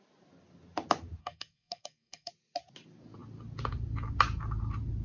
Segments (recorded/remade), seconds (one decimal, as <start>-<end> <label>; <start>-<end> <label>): 0.0-1.2 recorded; 1.2-2.3 remade; 2.3-5.0 recorded